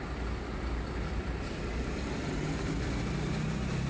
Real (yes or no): yes